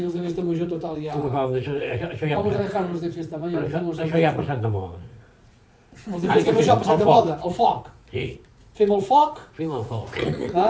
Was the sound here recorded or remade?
remade